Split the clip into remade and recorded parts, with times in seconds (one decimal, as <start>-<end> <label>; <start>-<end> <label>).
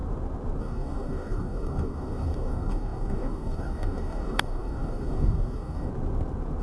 0.0-0.6 recorded; 0.6-5.9 remade; 5.9-6.6 recorded